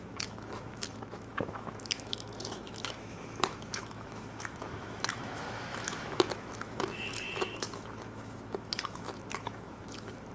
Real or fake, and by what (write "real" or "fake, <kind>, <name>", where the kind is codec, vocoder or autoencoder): fake, autoencoder, DAC-VAE